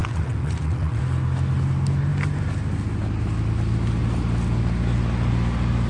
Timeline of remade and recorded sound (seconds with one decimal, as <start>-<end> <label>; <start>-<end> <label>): 0.0-1.0 remade; 1.0-5.9 recorded